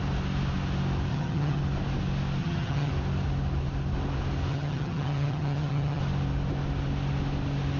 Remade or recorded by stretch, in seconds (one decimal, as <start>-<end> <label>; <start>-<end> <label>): 0.0-1.1 recorded; 1.1-1.6 remade; 1.6-2.4 recorded; 2.4-2.9 remade; 2.9-4.5 recorded; 4.5-6.0 remade; 6.0-7.8 recorded